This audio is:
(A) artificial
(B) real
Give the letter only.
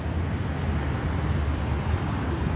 B